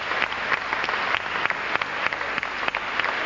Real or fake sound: real